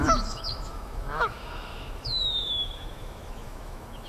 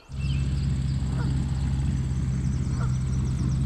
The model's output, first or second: first